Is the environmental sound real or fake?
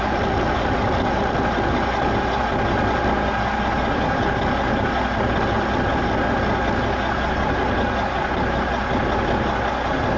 real